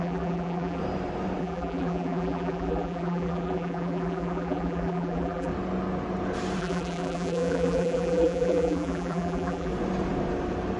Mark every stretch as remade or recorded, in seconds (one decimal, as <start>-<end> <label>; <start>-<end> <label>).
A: 0.0-0.8 remade; 0.8-1.4 recorded; 1.4-5.5 remade; 5.5-6.6 recorded; 6.6-9.7 remade; 9.7-10.8 recorded